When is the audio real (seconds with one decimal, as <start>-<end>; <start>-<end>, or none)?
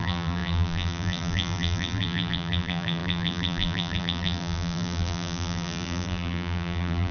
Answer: none